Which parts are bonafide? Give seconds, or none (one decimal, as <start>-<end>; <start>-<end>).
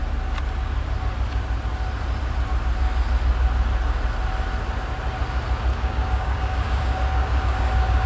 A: 0.0-5.7